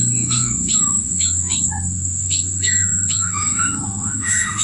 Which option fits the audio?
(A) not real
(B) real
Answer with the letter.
A